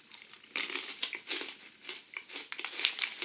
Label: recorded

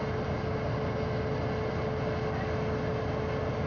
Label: recorded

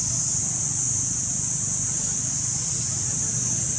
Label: recorded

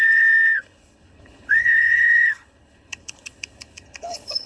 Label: remade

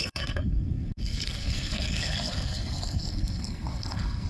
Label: remade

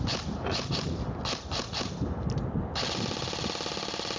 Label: recorded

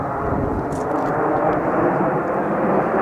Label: recorded